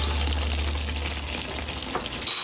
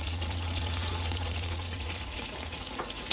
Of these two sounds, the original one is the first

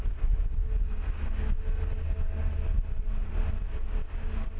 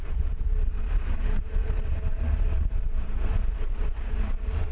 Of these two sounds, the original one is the first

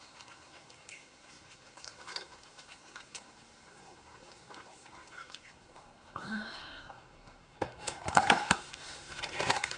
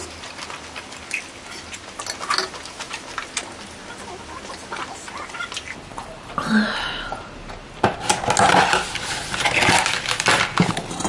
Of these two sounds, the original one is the second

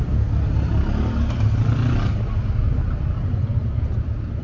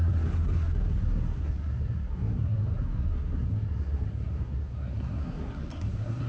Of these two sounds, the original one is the first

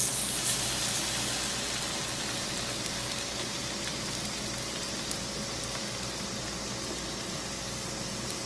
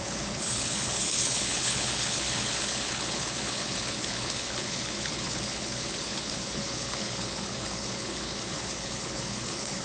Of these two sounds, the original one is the first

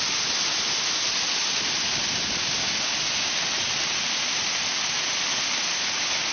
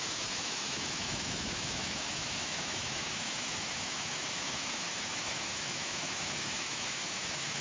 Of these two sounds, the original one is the first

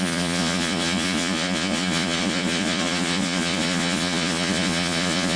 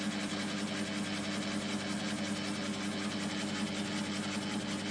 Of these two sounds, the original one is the second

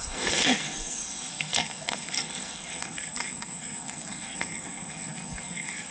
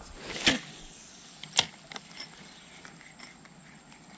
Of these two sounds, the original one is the second